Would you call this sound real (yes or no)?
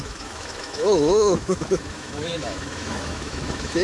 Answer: no